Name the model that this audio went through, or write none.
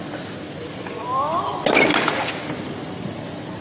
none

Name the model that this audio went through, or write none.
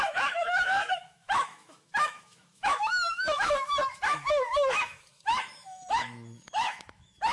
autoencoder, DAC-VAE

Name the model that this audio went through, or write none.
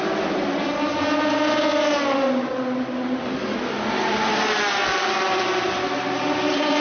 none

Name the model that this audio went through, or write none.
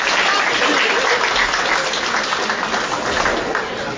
none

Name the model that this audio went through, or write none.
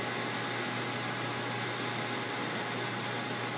none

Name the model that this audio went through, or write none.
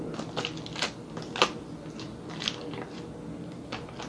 none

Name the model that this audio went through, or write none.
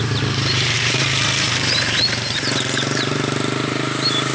vocoder, BigVGAN v2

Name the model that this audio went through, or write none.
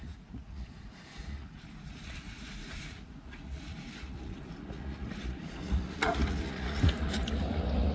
vocoder, Vocos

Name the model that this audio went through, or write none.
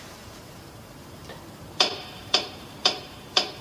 vocoder, BigVGAN v2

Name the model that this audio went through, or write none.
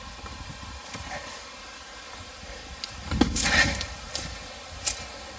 none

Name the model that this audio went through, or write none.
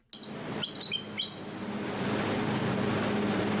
none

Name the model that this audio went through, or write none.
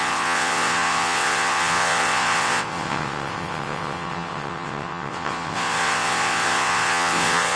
vocoder, WaveNeXt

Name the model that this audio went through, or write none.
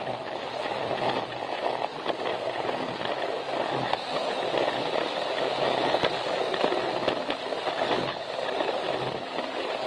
none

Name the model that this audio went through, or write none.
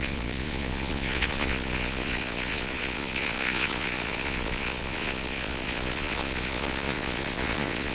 vocoder, Vocos